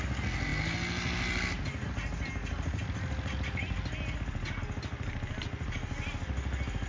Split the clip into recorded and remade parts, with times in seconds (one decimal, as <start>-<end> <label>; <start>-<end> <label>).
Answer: 0.0-6.9 recorded